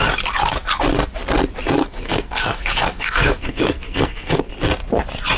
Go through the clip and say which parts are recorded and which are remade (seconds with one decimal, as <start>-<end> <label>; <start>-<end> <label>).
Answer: 0.0-1.8 recorded; 1.8-4.5 remade; 4.5-5.4 recorded